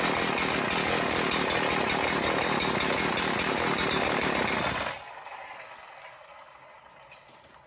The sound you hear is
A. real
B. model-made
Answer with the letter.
A